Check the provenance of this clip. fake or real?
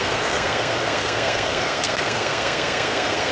fake